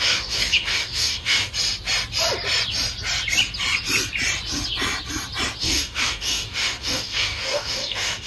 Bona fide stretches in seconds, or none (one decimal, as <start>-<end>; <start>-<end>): 1.5-5.6